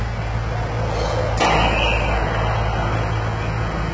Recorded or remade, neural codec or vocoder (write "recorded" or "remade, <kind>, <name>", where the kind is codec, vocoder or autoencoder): recorded